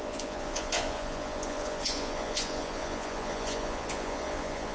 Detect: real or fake fake